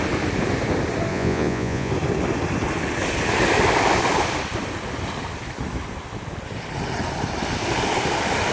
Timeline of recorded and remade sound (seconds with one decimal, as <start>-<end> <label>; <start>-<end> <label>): 0.0-1.1 recorded; 1.1-1.9 remade; 1.9-8.5 recorded